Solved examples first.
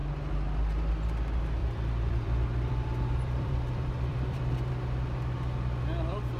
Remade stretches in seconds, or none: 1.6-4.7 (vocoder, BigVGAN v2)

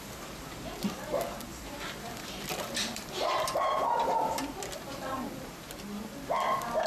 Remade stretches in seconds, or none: 1.5-5.6 (vocoder, BigVGAN v2)

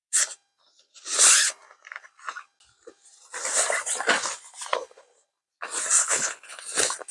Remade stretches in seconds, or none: 6.0-6.6 (codec, HILCodec)

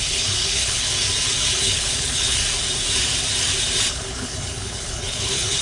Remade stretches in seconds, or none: 0.0-0.9 (codec, HILCodec); 1.6-2.4; 3.9-5.6